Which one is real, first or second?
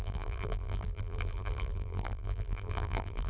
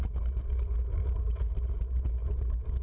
second